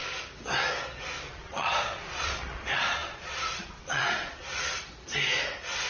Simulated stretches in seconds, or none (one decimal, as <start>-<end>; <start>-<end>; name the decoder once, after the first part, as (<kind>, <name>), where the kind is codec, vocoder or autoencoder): 1.3-4.4 (vocoder, Vocos)